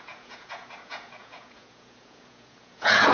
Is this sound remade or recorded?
remade